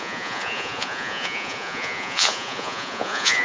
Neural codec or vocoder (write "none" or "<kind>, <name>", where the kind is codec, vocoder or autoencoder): vocoder, Vocos